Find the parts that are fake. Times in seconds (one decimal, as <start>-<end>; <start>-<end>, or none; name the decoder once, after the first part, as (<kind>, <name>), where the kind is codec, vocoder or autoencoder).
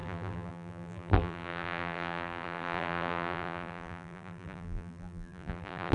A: 0.0-5.9 (vocoder, BigVGAN v2)